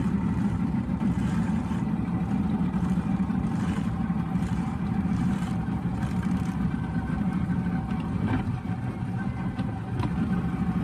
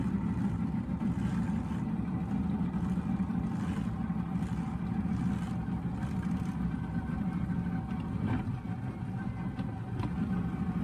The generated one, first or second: first